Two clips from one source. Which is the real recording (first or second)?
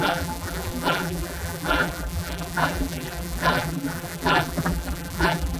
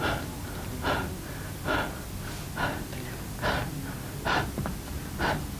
second